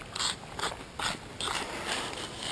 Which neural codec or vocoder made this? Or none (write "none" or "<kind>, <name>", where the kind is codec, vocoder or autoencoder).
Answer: none